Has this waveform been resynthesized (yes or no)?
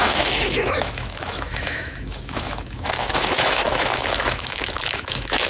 yes